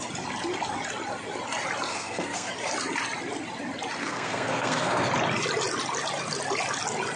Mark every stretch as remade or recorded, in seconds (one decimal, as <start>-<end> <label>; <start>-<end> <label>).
0.0-1.9 recorded; 1.9-2.5 remade; 2.5-4.0 recorded; 4.0-5.1 remade; 5.1-7.2 recorded